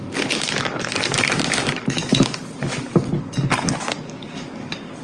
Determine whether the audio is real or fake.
fake